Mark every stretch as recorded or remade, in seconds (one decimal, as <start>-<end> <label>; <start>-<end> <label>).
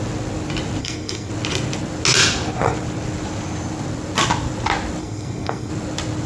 0.0-0.8 recorded; 0.8-1.3 remade; 1.3-5.0 recorded; 5.0-5.7 remade; 5.7-6.3 recorded